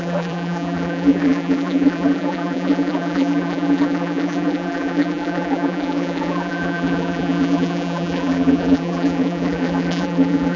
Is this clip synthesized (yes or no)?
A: yes